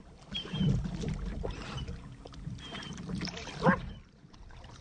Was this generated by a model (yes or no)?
yes